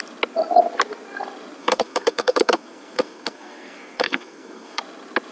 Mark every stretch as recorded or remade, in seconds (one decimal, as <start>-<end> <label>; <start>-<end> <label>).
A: 0.0-1.6 recorded; 1.6-4.8 remade; 4.8-5.3 recorded